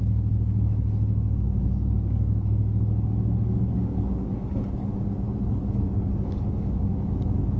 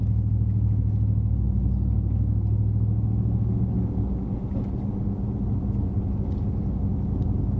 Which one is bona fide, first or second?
second